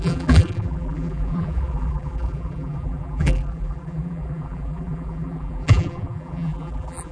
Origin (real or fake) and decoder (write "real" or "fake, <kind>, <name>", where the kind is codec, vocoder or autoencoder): fake, vocoder, BigVGAN v2